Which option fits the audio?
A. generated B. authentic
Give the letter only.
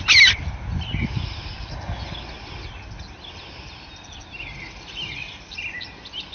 B